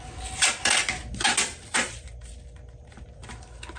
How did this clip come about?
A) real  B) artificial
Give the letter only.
A